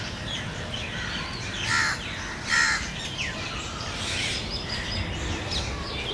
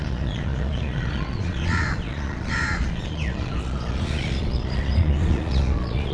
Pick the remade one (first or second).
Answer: second